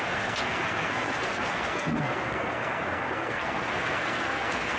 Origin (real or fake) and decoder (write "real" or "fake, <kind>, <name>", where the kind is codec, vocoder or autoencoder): fake, codec, SNAC